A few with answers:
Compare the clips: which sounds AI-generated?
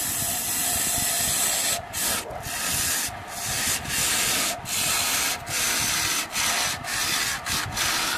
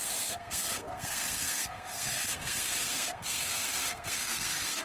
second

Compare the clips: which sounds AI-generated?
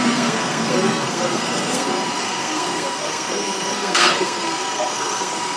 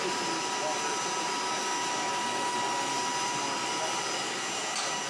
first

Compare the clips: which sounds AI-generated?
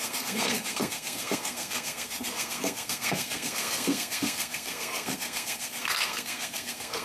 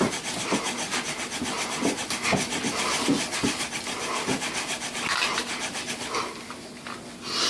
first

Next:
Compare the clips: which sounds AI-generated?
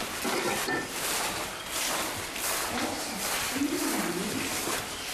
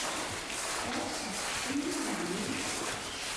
first